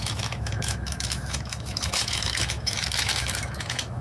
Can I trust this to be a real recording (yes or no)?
no